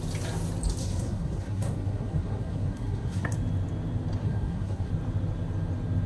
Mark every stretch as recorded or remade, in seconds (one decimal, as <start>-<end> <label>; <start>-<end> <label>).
0.0-0.8 recorded; 0.8-3.3 remade; 3.3-4.2 recorded; 4.2-4.9 remade; 4.9-6.1 recorded